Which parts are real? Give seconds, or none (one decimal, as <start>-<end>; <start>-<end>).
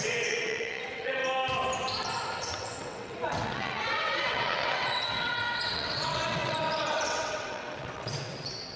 1.2-2.3